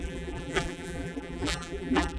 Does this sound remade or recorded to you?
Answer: remade